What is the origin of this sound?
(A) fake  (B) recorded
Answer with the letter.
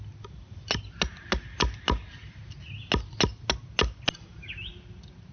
B